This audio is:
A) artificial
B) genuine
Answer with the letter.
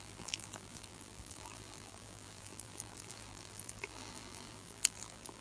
A